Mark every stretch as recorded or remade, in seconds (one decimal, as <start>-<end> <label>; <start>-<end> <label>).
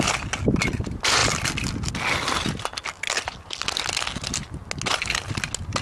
0.0-5.8 recorded